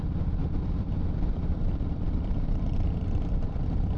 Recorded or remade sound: remade